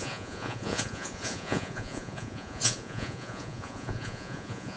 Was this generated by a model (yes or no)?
yes